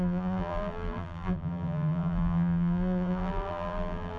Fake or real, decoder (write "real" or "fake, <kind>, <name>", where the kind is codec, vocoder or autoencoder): fake, vocoder, BigVGAN v2